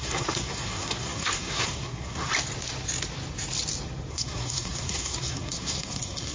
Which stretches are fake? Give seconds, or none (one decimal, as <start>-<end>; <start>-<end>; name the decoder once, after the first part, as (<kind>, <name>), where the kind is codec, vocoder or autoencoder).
0.0-2.3 (codec, SNAC); 4.1-6.3